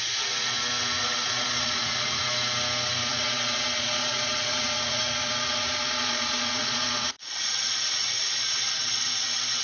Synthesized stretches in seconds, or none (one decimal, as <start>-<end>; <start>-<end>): 1.0-2.2; 3.1-7.8; 8.4-9.1